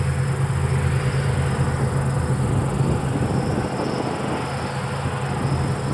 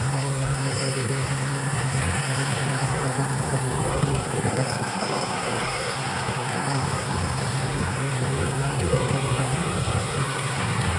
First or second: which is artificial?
second